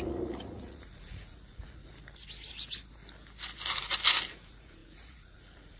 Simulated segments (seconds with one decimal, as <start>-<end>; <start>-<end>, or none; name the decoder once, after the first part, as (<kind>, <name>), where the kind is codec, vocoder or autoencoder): 0.0-1.8 (vocoder, Vocos); 4.3-5.8